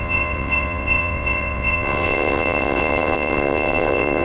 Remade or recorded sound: remade